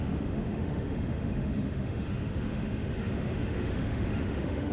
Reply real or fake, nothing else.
fake